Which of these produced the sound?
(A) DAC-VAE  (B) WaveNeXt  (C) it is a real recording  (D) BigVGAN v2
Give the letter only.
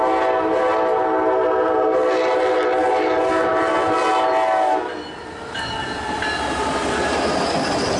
C